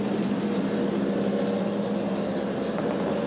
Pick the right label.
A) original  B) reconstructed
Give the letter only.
A